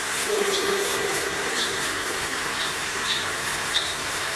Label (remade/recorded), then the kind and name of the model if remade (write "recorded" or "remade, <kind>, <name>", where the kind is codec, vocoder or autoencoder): remade, codec, SNAC